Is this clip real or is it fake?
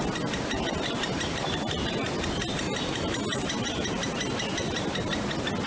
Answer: real